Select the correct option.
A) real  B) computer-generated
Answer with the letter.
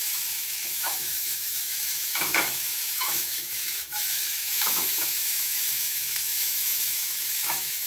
B